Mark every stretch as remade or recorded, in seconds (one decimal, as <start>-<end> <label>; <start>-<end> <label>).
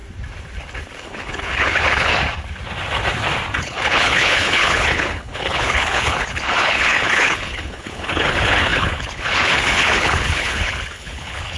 0.0-1.0 recorded; 1.0-2.1 remade; 2.1-3.6 recorded; 3.6-11.6 remade